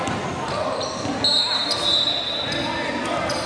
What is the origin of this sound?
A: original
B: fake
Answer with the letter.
A